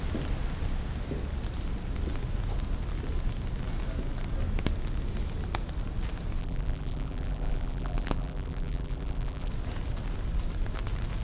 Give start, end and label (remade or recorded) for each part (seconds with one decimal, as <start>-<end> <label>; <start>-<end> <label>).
0.0-6.4 recorded; 6.4-9.5 remade; 9.5-11.2 recorded